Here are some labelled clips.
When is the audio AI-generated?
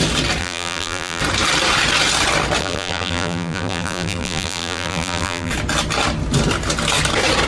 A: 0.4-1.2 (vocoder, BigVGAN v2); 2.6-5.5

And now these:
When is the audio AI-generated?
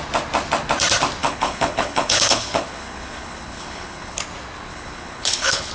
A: 1.2-4.2 (codec, HILCodec); 4.7-5.7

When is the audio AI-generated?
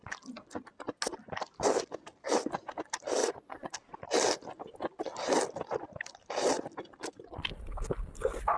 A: 3.2-3.7 (vocoder, Vocos)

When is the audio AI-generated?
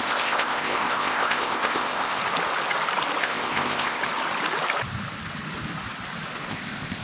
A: 0.0-2.2 (codec, ZipCodec); 3.2-4.0; 6.5-7.0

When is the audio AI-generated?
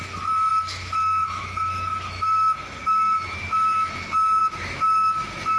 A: 0.5-3.9 (autoencoder, DAC-VAE); 4.4-5.6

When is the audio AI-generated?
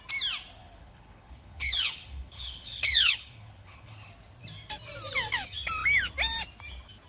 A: 0.6-4.1 (codec, HILCodec)